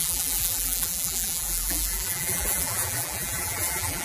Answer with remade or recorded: remade